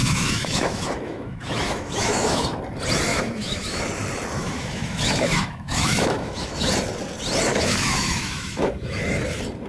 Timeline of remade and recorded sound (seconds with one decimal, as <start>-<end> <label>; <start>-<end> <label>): 0.0-2.6 remade; 2.6-3.1 recorded; 3.1-3.8 remade; 3.8-4.4 recorded; 4.4-6.7 remade; 6.7-7.5 recorded; 7.5-9.0 remade; 9.0-9.7 recorded

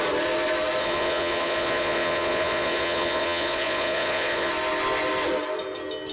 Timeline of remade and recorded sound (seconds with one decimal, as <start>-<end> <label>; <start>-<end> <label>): 0.0-0.8 recorded; 0.8-4.5 remade; 4.5-6.1 recorded

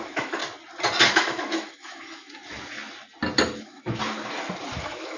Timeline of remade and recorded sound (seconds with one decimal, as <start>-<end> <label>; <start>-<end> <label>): 0.0-0.4 remade; 0.4-1.1 recorded; 1.1-2.4 remade; 2.4-3.6 recorded; 3.6-4.0 remade; 4.0-4.8 recorded; 4.8-5.2 remade

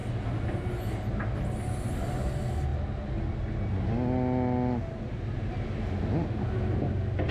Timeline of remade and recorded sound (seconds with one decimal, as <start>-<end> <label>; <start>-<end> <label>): 0.0-7.3 recorded